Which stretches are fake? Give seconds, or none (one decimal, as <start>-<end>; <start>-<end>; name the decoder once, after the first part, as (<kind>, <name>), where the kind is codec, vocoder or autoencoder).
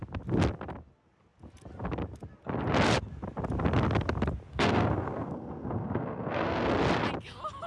4.5-6.7 (codec, SNAC)